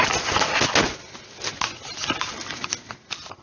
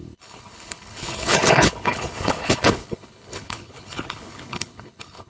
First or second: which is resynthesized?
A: second